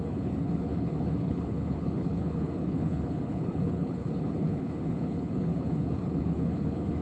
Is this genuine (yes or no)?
no